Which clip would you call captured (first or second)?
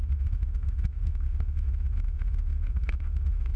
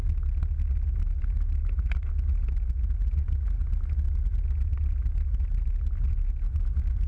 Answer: second